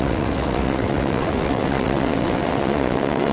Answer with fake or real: fake